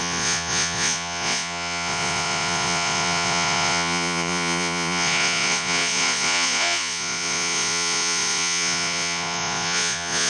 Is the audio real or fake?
fake